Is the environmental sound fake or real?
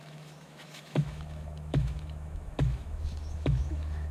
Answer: fake